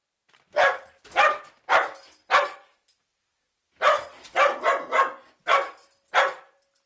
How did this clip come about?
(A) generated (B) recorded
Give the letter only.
B